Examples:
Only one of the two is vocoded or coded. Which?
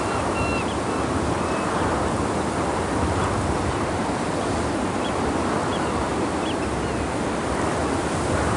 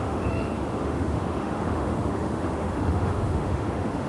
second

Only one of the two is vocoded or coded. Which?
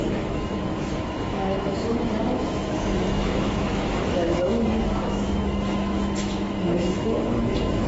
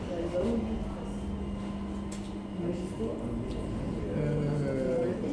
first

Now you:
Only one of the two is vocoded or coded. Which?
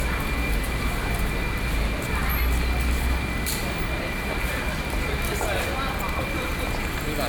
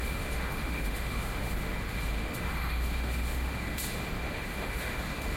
second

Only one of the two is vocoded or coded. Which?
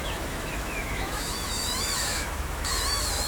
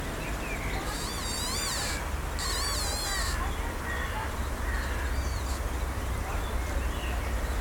first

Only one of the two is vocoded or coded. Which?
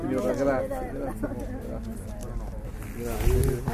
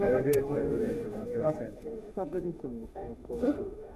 second